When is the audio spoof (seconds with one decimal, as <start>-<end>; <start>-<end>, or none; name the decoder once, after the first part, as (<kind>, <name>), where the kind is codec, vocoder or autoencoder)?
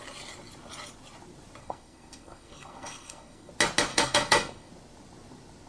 1.6-3.5 (codec, SNAC); 3.9-4.7